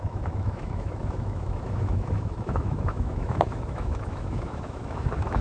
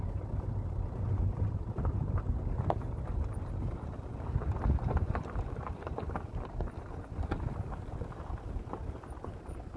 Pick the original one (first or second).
second